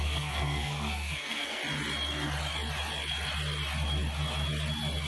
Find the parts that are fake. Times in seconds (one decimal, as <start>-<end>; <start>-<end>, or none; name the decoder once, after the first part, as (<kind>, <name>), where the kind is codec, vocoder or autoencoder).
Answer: 0.0-1.6 (codec, SNAC)